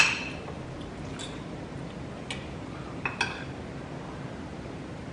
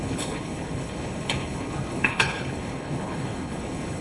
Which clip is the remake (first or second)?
second